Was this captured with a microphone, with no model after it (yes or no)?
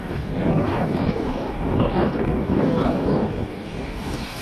no